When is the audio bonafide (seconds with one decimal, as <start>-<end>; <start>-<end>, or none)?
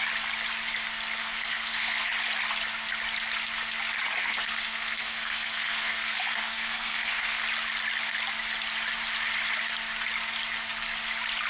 0.0-1.2; 2.1-4.2; 7.4-11.5